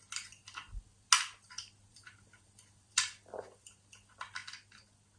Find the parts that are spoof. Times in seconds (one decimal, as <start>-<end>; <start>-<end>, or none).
1.9-3.7